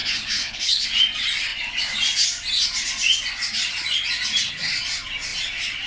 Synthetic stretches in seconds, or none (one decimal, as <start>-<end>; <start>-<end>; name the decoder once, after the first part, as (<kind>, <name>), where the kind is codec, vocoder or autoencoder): 0.0-0.9 (codec, HILCodec)